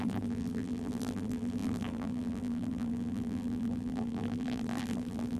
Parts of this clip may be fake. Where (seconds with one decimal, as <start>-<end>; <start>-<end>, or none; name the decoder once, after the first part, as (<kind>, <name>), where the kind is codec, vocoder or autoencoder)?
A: 0.0-5.4 (vocoder, BigVGAN v2)